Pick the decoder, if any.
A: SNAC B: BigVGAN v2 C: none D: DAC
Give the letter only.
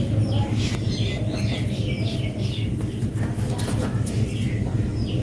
C